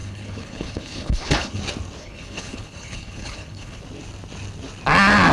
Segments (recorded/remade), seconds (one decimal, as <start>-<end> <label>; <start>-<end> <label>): 0.0-1.6 remade; 1.6-2.0 recorded; 2.0-3.8 remade; 3.8-5.3 recorded